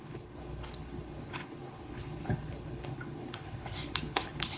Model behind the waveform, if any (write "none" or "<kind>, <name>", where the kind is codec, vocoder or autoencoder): codec, HILCodec